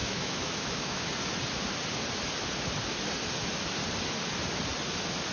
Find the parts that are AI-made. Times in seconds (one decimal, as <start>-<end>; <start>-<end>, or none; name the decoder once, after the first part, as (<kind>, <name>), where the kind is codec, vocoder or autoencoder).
0.0-1.1 (autoencoder, DAC-VAE)